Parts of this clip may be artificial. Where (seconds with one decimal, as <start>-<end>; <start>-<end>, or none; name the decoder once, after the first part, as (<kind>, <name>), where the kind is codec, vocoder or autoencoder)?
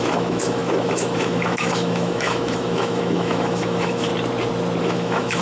0.0-4.1 (autoencoder, DAC-VAE); 4.8-5.4